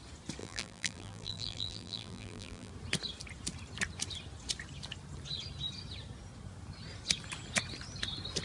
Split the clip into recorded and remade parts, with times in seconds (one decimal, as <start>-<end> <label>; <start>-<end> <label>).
0.0-0.4 recorded; 0.4-2.7 remade; 2.7-8.4 recorded